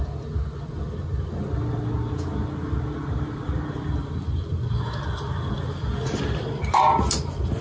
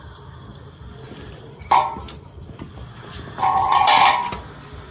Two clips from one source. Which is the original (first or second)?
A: first